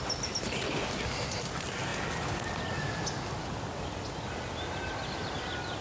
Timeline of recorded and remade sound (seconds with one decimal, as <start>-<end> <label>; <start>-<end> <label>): 0.0-5.8 recorded